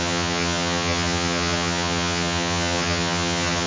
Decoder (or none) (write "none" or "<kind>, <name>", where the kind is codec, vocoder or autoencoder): vocoder, HiFi-GAN